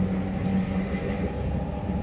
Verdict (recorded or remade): recorded